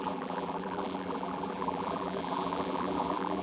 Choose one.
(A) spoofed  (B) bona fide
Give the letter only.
A